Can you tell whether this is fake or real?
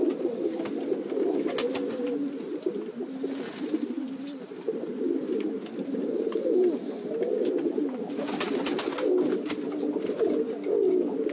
real